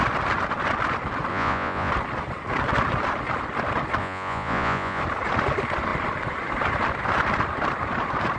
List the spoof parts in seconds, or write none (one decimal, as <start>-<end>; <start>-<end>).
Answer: 1.3-1.9; 4.0-5.0